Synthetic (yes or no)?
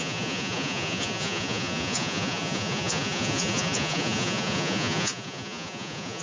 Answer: yes